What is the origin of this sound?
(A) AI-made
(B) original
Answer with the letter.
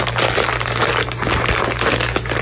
B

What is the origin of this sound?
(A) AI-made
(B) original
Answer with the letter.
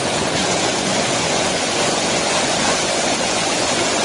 A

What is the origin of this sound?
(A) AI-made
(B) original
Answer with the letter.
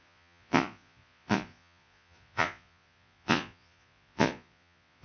A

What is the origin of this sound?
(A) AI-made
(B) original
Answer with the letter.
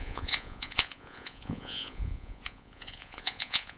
A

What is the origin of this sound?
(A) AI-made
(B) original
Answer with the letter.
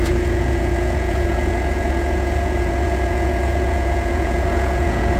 A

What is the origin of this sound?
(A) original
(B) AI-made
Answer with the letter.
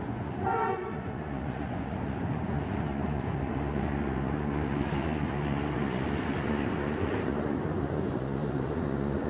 B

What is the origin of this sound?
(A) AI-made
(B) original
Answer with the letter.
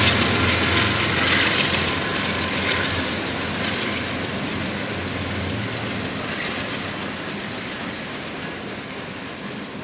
B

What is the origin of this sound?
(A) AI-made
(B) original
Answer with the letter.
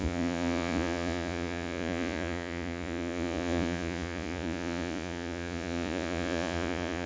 A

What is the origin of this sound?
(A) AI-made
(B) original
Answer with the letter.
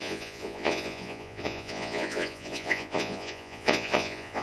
A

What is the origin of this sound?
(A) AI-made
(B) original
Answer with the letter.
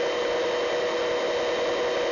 B